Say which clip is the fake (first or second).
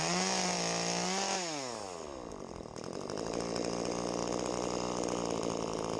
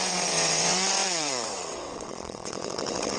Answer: second